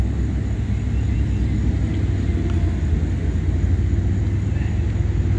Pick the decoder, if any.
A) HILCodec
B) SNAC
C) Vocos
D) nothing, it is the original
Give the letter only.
D